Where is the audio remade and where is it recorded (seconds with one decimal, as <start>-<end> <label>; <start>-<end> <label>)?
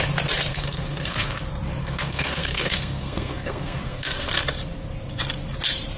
0.0-0.5 recorded; 0.5-1.4 remade; 1.4-1.8 recorded; 1.8-4.3 remade; 4.3-6.0 recorded